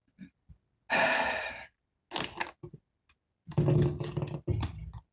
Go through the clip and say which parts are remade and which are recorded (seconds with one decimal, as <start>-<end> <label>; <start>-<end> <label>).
0.0-5.1 recorded